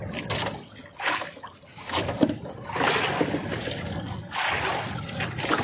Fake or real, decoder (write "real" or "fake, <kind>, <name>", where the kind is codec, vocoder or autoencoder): real